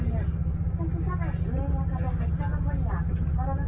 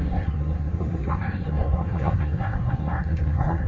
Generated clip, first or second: second